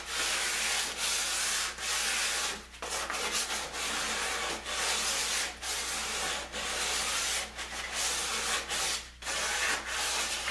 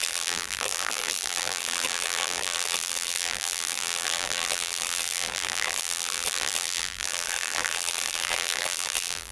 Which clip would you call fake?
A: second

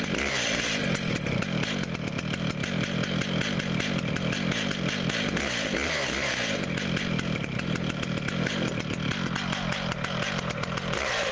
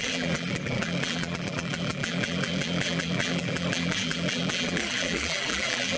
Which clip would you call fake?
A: second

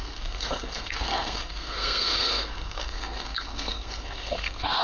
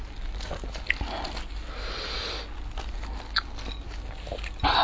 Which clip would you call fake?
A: first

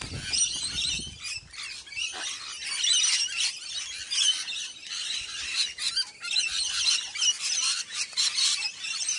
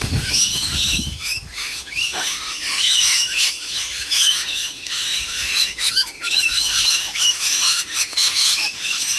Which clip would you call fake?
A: second